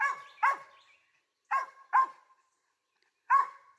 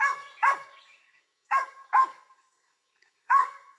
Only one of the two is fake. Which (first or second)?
second